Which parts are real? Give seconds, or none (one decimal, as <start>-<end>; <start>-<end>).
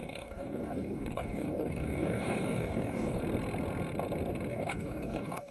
3.2-4.5